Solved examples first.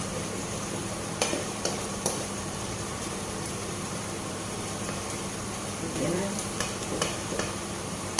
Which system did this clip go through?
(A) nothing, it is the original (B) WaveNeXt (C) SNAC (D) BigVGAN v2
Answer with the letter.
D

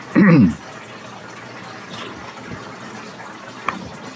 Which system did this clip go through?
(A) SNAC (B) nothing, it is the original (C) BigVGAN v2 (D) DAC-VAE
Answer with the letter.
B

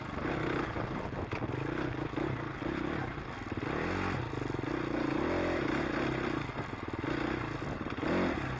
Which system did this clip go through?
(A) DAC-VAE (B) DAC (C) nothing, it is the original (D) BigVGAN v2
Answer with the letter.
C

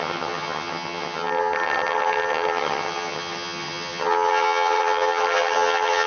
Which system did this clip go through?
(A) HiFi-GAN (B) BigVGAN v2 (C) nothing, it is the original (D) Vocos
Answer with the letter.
A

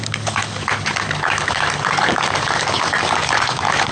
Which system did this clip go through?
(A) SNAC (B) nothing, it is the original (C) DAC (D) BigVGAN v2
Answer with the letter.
C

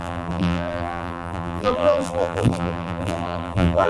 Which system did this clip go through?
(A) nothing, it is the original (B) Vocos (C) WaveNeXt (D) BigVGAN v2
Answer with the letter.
D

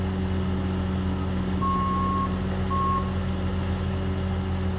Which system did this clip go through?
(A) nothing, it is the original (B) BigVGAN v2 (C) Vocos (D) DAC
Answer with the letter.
A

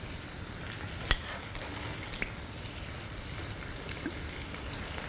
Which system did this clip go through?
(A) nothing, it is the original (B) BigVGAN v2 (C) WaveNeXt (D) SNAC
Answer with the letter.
A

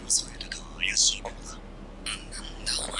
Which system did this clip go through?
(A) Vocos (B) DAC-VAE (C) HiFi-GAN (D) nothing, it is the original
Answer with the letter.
D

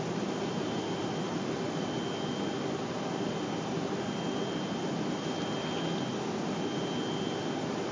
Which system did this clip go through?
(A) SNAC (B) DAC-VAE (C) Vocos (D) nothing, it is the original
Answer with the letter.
D